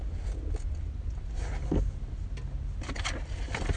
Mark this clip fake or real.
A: real